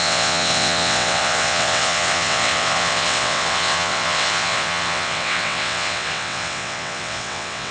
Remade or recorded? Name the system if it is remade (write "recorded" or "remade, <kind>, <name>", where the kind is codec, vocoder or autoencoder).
remade, vocoder, WaveNeXt